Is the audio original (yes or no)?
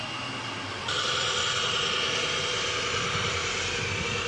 yes